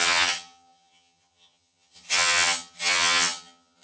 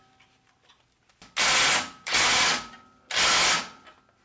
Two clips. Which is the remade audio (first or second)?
first